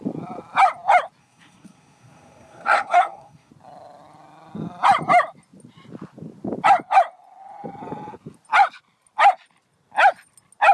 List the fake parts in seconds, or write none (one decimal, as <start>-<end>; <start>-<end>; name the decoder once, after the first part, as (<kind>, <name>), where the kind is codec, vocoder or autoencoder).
1.2-3.5 (codec, SNAC)